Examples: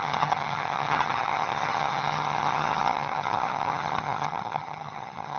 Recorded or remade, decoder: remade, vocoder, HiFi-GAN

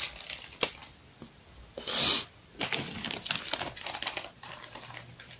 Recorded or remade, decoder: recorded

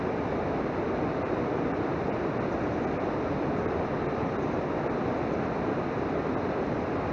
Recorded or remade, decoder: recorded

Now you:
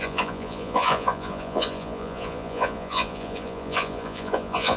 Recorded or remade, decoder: remade, vocoder, Vocos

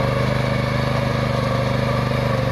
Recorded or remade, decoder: recorded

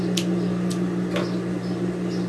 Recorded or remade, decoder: recorded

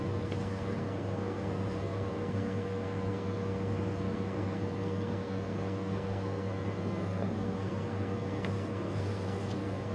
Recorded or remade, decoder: remade, codec, SNAC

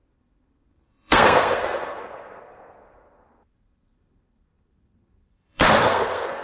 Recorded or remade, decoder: remade, codec, SNAC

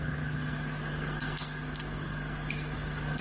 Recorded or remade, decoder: remade, codec, SNAC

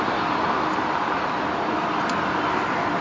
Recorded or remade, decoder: recorded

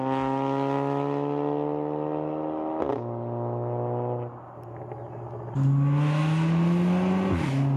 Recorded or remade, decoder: recorded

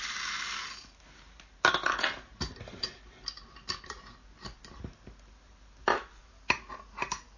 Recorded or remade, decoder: recorded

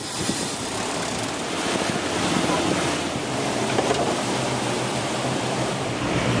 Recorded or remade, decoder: remade, vocoder, BigVGAN v2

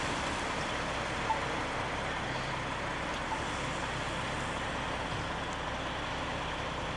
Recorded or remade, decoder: recorded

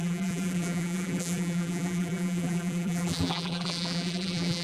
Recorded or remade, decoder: remade, vocoder, BigVGAN v2